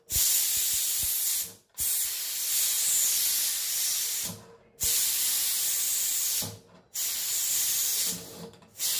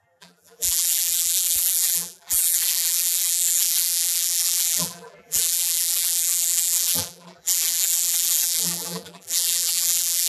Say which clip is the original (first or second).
first